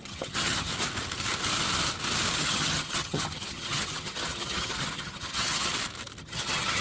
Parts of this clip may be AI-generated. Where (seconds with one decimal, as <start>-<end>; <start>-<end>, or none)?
0.0-0.7; 2.4-5.7; 6.2-6.8